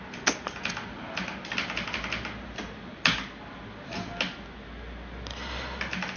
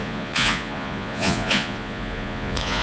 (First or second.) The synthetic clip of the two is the second